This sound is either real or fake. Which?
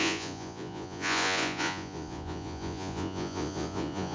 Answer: fake